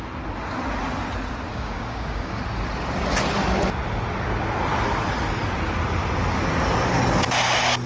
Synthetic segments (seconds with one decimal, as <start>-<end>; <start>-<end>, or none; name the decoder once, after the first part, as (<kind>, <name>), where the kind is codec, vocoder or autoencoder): 1.5-2.4 (codec, DAC)